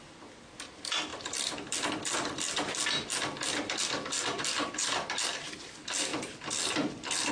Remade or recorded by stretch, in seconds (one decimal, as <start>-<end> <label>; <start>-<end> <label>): 0.0-6.1 remade; 6.1-7.3 recorded